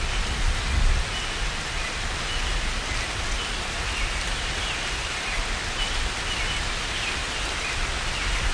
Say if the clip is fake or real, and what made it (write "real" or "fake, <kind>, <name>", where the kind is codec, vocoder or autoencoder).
real